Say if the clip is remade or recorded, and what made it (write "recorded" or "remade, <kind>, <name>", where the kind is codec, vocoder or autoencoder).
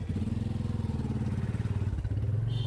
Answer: recorded